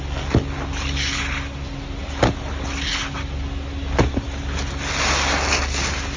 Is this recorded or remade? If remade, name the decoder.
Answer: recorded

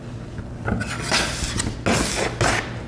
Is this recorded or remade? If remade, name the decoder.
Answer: recorded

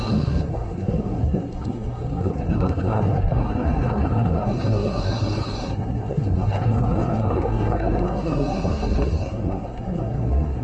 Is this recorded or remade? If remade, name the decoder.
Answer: remade, codec, SNAC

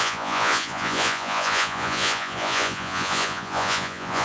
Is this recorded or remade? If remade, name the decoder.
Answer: remade, vocoder, Vocos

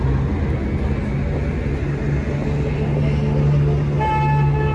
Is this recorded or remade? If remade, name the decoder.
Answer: recorded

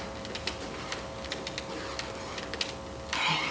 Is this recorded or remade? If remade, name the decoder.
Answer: recorded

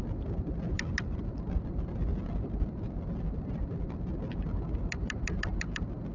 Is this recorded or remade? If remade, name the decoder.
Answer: recorded